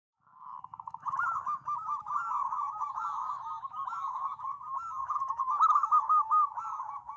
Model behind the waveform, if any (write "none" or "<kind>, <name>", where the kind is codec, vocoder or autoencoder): autoencoder, DAC-VAE